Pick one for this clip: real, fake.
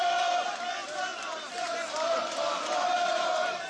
fake